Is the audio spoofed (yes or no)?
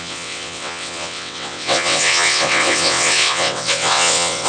yes